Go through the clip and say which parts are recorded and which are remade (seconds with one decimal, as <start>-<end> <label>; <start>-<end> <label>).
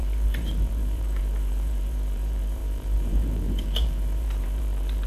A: 0.0-5.1 remade